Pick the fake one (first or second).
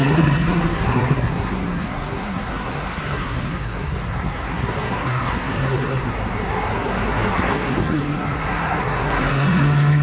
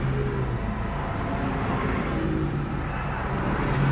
first